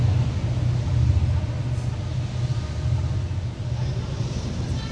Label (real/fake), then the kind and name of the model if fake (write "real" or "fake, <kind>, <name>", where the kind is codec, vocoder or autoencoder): real